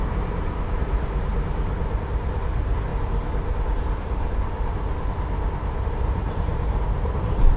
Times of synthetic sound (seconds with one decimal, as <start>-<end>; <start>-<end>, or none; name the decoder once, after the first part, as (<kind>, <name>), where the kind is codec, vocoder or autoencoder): 0.0-1.3 (vocoder, BigVGAN v2); 2.1-2.9; 5.8-7.6